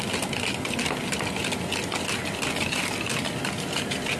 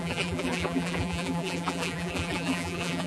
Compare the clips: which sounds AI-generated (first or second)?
second